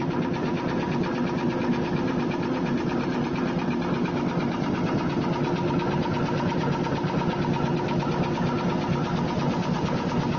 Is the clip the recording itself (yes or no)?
yes